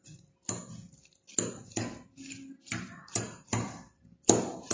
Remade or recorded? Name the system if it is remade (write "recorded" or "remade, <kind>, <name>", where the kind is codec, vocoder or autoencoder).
recorded